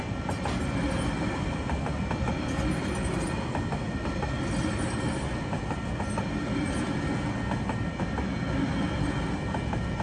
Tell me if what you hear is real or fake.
real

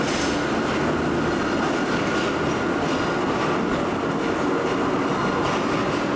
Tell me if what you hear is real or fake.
real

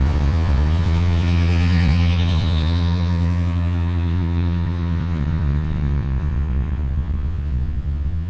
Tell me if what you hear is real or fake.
fake